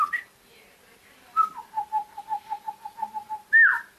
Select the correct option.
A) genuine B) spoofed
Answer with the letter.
A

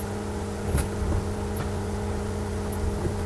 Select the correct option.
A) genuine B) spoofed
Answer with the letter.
A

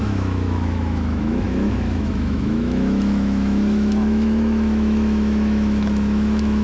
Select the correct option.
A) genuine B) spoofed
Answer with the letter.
B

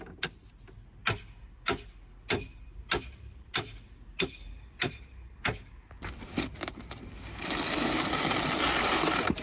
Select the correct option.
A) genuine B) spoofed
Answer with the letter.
A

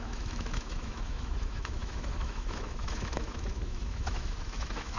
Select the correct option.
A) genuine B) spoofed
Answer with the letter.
B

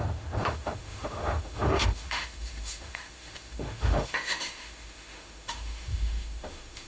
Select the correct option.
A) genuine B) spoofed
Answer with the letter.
B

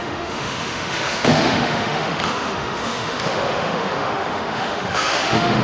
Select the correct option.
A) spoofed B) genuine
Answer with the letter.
A